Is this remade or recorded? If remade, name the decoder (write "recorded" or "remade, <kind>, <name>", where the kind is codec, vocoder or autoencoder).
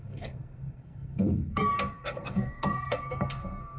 remade, codec, SNAC